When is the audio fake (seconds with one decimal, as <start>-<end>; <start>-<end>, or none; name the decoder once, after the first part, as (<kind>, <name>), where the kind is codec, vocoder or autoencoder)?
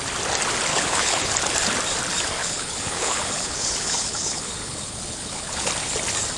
0.7-1.3 (codec, HILCodec); 2.4-5.7